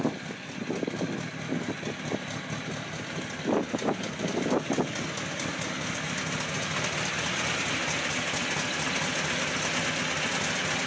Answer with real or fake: real